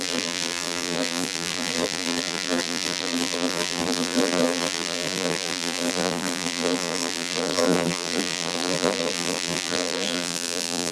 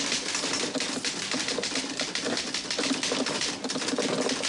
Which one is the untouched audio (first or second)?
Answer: second